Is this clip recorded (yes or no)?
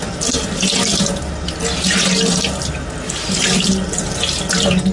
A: yes